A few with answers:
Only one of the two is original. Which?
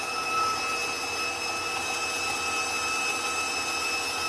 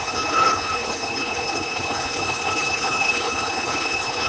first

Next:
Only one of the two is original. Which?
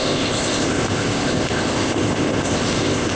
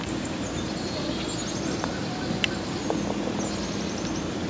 second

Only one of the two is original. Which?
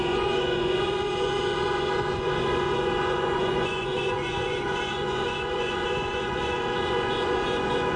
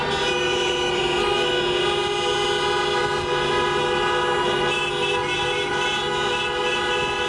second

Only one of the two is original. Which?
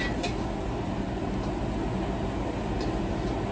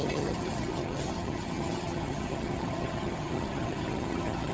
first